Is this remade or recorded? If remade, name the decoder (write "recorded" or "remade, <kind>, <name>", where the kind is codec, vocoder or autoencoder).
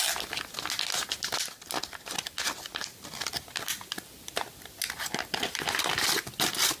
recorded